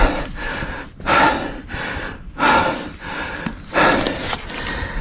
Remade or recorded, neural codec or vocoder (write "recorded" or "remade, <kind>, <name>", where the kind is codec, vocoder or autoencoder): recorded